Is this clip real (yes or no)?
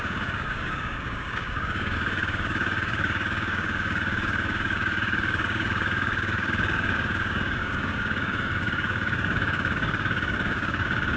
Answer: no